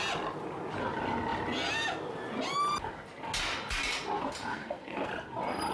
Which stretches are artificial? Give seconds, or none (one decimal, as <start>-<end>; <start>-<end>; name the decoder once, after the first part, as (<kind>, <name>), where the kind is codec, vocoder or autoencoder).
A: 4.5-5.1 (codec, SNAC)